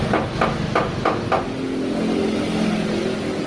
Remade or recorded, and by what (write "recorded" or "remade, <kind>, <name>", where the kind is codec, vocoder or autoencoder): recorded